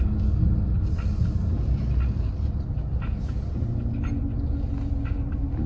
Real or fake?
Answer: real